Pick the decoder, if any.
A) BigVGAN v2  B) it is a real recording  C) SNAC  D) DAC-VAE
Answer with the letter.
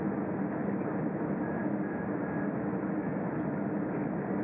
B